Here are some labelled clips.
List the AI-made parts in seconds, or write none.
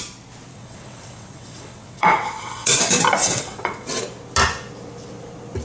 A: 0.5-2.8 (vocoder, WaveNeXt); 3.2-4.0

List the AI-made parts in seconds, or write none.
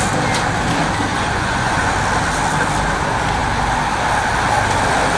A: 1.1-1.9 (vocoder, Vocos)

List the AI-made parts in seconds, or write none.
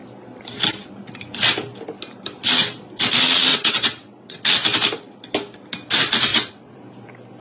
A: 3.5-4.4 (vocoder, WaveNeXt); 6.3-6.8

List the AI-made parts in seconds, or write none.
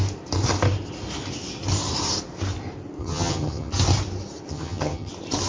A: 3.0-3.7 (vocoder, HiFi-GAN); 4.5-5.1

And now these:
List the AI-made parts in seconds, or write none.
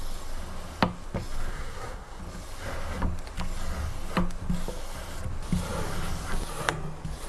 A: 1.5-2.2 (codec, SNAC)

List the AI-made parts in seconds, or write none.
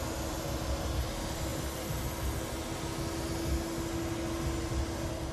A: none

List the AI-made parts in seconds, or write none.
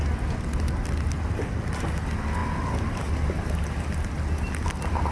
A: none